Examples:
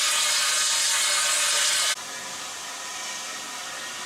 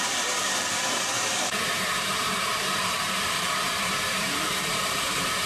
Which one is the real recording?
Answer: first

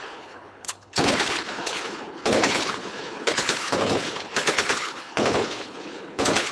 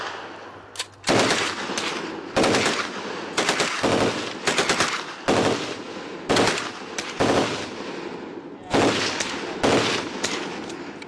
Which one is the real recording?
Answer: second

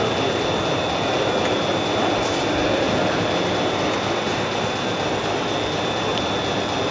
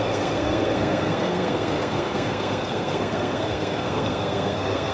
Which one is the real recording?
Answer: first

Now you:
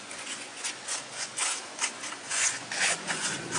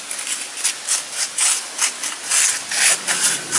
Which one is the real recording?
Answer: second